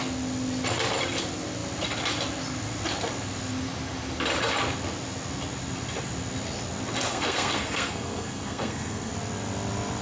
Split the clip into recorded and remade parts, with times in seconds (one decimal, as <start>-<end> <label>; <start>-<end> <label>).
0.0-7.1 recorded; 7.1-9.1 remade; 9.1-10.0 recorded